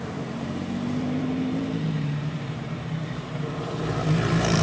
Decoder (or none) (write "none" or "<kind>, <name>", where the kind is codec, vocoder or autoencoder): vocoder, BigVGAN v2